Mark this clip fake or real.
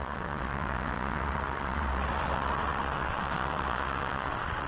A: fake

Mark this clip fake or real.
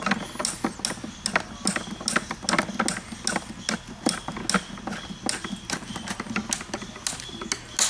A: real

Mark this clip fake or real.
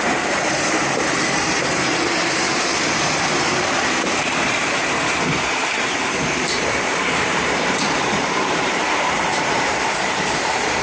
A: fake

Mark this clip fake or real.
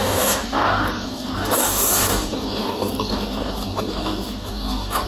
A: fake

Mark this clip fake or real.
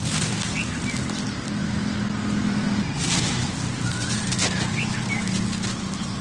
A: real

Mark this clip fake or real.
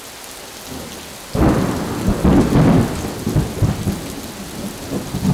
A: real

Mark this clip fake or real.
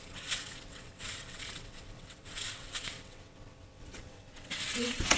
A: fake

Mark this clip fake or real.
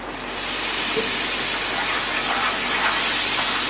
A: real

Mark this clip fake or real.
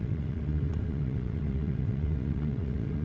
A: fake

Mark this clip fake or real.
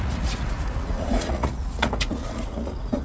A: fake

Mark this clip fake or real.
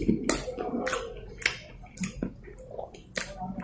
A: real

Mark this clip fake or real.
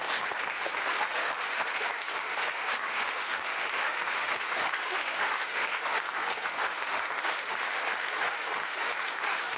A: fake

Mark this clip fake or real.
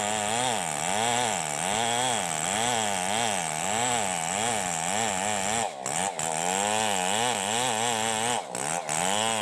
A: real